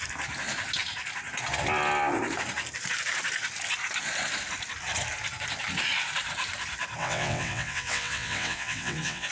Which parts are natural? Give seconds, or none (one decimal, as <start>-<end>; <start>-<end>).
0.0-7.0